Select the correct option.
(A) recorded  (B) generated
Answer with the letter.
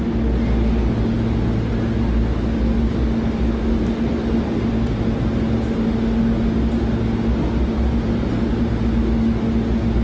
A